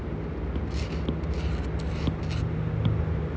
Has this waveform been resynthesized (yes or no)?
no